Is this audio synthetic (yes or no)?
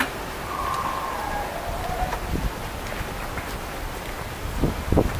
no